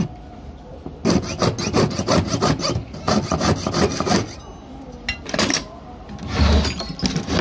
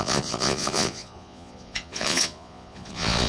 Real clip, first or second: first